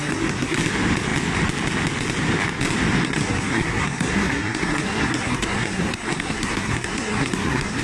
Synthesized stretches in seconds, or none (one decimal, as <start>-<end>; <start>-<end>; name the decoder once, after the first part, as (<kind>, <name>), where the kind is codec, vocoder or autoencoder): 0.0-0.6 (codec, SNAC); 3.0-7.8